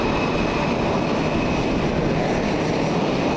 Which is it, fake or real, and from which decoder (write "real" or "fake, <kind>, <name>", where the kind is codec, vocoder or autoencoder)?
real